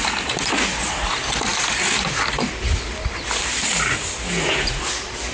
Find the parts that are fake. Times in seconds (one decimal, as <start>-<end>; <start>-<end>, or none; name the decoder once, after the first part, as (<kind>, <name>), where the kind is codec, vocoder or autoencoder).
none